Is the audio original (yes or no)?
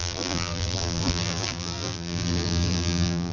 no